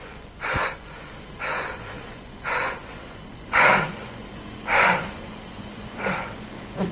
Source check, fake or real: fake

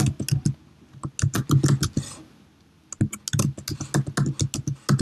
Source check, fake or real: real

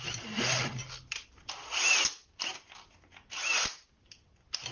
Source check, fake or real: real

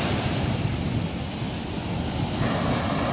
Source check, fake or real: real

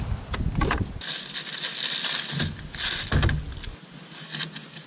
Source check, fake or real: real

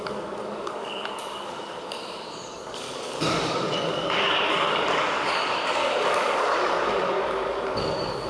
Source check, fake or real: fake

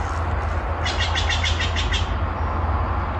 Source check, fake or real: real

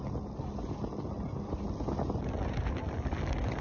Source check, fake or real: real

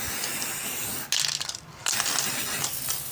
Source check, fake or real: real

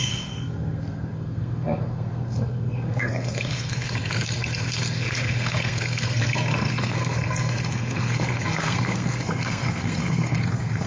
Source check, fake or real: fake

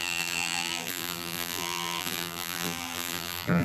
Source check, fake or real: fake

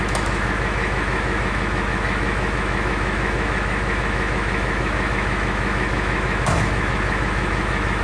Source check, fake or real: fake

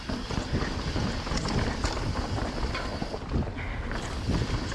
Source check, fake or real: real